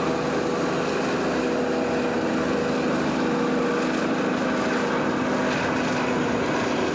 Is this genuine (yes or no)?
yes